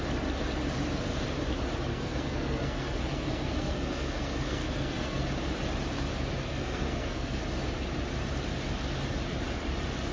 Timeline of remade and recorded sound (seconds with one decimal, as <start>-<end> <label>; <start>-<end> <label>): 0.0-1.9 recorded; 1.9-5.3 remade; 5.3-6.5 recorded; 6.5-7.4 remade; 7.4-10.1 recorded